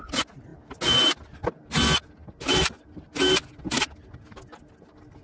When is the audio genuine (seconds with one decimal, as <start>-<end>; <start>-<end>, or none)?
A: 0.0-5.2